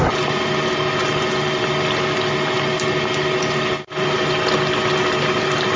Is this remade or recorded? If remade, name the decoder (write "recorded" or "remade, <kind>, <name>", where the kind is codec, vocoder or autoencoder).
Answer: recorded